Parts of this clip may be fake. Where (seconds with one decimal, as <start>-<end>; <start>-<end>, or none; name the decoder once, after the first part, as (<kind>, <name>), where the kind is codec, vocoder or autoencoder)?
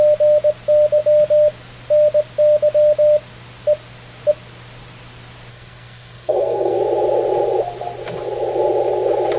5.5-6.8 (codec, SNAC)